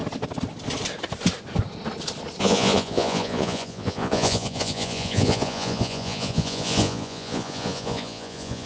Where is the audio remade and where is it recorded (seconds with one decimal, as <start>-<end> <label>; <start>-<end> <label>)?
0.0-2.4 recorded; 2.4-8.7 remade